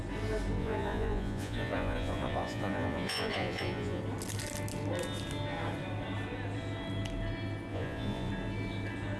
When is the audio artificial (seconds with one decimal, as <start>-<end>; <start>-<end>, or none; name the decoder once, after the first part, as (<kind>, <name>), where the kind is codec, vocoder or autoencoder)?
0.6-4.0 (vocoder, Vocos); 7.7-8.3